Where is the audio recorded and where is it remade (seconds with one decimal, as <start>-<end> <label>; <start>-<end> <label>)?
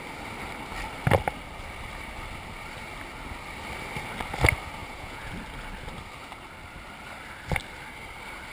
0.0-4.8 recorded; 4.8-5.3 remade; 5.3-8.5 recorded